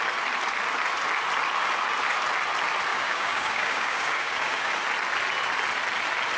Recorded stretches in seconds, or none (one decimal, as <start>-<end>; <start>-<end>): 0.0-2.9; 4.7-6.4